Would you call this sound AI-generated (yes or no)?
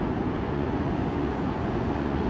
yes